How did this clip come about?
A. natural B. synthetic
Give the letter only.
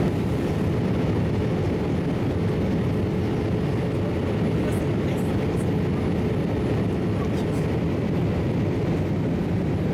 A